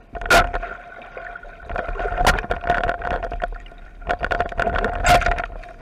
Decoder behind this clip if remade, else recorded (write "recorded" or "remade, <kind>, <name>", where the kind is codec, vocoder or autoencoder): recorded